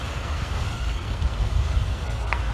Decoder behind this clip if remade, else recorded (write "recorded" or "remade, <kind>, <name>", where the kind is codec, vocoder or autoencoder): remade, codec, SNAC